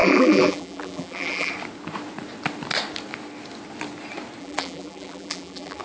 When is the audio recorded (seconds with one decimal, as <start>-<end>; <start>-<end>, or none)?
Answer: 1.5-4.4